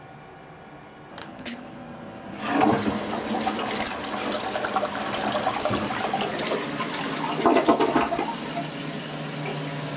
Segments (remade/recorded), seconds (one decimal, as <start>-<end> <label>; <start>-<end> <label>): 0.0-1.2 recorded; 1.2-1.8 remade; 1.8-10.0 recorded